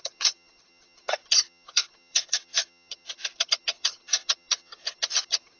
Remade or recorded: remade